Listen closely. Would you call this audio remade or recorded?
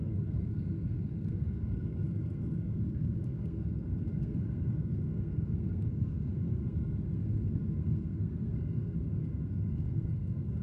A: remade